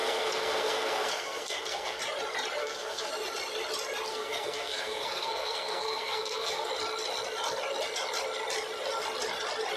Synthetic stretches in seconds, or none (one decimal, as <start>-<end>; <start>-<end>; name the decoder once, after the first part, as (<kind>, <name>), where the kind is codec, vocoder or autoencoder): 0.0-2.0 (codec, SNAC); 2.6-3.1; 4.1-6.7